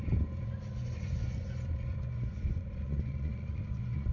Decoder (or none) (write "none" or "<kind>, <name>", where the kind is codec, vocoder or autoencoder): vocoder, Vocos